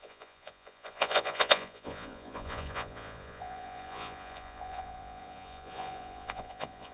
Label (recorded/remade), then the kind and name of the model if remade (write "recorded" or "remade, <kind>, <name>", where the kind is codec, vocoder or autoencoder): remade, vocoder, Vocos